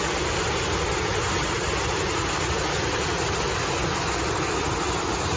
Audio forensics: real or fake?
real